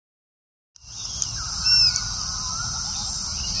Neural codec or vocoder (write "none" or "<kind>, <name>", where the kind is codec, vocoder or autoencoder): none